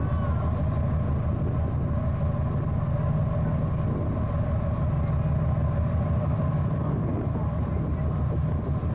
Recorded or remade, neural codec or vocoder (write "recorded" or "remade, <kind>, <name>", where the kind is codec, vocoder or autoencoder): recorded